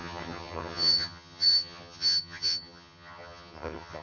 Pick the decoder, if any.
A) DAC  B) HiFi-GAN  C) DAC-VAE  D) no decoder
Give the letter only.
B